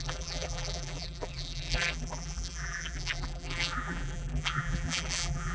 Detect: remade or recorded remade